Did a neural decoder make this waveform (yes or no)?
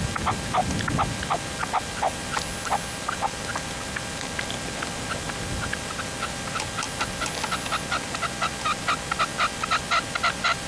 no